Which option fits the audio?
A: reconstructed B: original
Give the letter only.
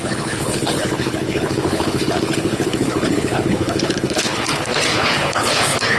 A